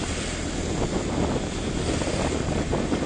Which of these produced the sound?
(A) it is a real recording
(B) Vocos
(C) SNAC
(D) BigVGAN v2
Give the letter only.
A